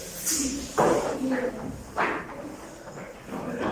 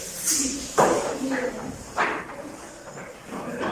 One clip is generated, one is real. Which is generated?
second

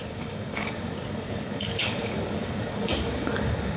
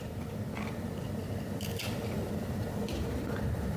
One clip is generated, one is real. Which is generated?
first